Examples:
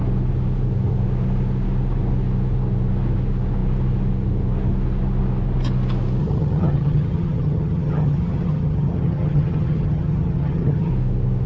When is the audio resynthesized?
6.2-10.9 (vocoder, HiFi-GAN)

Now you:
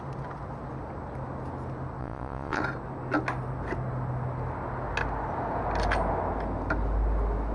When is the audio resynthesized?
2.0-2.6 (vocoder, Vocos)

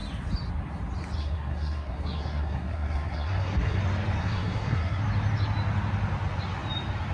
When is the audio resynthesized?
1.2-3.8 (codec, SNAC); 4.2-5.0

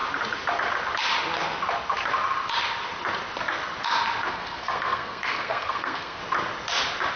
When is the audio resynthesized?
4.3-6.2 (codec, SNAC)